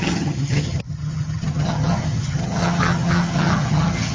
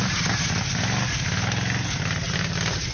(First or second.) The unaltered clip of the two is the second